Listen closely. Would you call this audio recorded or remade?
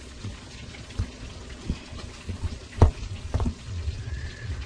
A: remade